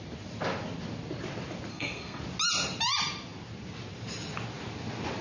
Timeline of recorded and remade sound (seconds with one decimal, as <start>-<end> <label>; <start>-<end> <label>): 0.0-1.7 recorded; 1.7-2.2 remade; 2.2-5.2 recorded